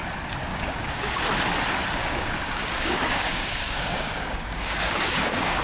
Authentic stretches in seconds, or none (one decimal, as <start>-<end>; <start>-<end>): 0.0-0.5; 1.2-2.0